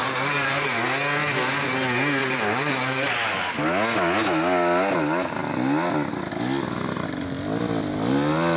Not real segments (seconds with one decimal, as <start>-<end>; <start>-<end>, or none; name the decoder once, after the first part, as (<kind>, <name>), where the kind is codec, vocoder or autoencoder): 0.0-0.7 (vocoder, BigVGAN v2); 2.2-3.5